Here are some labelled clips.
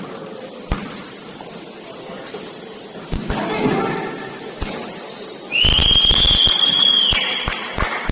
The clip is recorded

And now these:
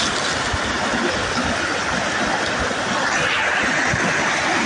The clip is recorded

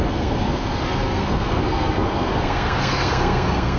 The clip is remade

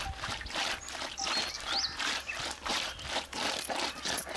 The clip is recorded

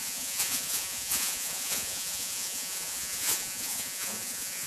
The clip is remade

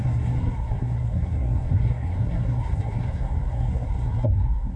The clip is remade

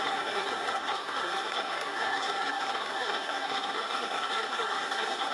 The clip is remade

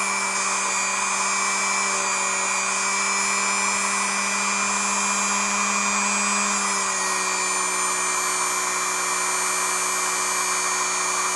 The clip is recorded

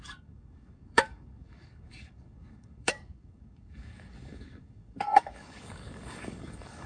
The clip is remade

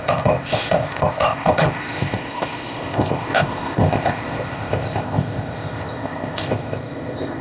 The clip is remade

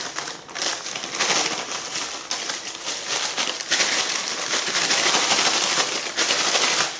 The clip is recorded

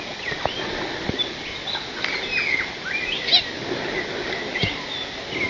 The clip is recorded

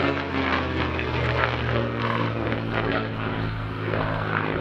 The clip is remade